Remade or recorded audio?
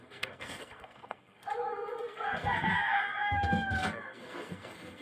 remade